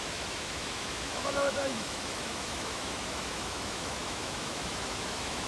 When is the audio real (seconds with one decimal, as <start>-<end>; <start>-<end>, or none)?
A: none